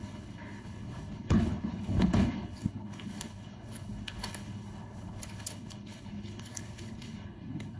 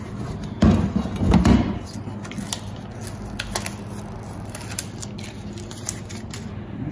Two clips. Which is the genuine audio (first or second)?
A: second